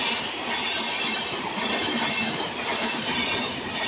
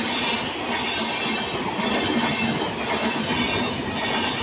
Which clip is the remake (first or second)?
first